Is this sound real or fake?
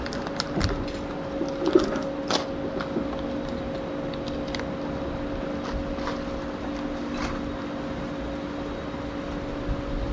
real